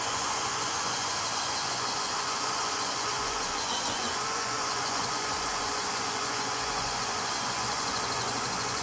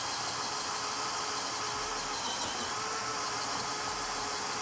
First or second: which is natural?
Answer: second